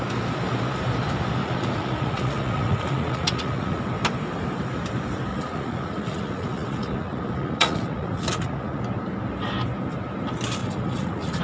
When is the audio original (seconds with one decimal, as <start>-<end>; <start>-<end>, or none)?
0.0-1.4; 3.8-5.3; 8.8-10.6